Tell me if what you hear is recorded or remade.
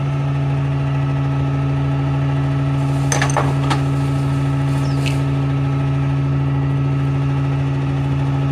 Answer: recorded